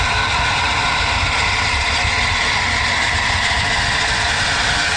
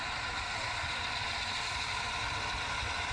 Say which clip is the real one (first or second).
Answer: first